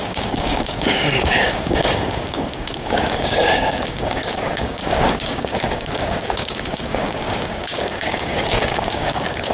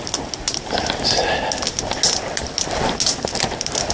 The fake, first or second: first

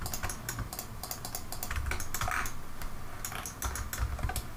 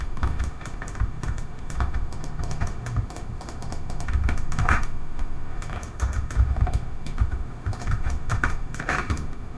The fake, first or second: second